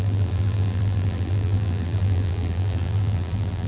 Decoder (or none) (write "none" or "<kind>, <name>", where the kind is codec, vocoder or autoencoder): vocoder, BigVGAN v2